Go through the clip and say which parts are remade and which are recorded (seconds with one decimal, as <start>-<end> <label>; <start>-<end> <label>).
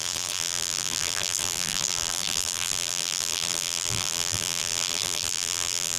0.0-6.0 remade